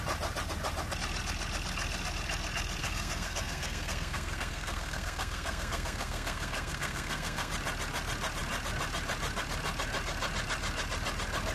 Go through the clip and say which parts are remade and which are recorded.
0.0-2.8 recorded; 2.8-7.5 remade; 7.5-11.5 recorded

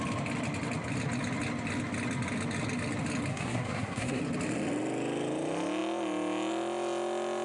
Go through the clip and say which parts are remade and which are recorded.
0.0-3.3 recorded; 3.3-4.2 remade; 4.2-7.4 recorded

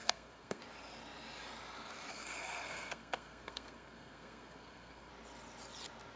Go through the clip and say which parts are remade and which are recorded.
0.0-0.6 remade; 0.6-2.1 recorded; 2.1-5.1 remade; 5.1-6.2 recorded

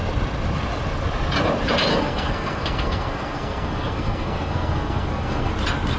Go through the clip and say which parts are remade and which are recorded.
0.0-1.9 recorded; 1.9-5.5 remade; 5.5-6.0 recorded

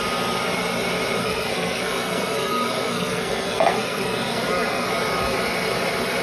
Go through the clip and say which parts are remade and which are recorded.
0.0-1.2 recorded; 1.2-4.9 remade; 4.9-6.2 recorded

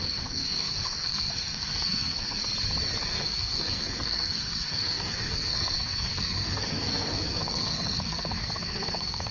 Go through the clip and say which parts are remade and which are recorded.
0.0-2.5 remade; 2.5-3.0 recorded; 3.0-9.3 remade

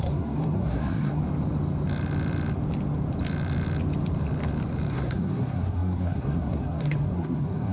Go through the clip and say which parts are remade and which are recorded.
0.0-1.2 remade; 1.2-4.9 recorded; 4.9-7.7 remade

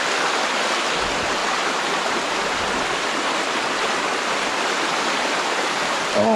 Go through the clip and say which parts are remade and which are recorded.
0.0-6.4 recorded